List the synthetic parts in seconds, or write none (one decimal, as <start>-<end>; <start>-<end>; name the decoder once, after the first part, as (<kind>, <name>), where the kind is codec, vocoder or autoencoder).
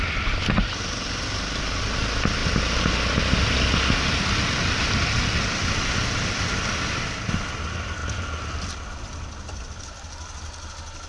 none